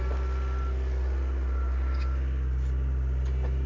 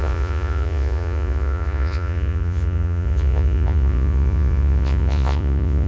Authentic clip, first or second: first